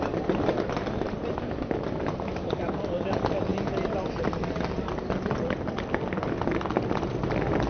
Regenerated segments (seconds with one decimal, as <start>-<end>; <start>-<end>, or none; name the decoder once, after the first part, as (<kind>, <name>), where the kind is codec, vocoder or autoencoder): none